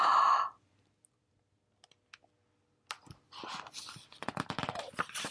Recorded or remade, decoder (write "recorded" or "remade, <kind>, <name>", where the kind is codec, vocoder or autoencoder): recorded